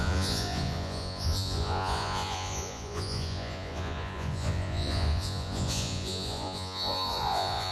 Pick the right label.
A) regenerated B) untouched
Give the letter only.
A